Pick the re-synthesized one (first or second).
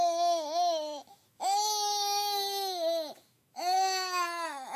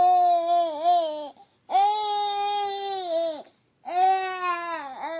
first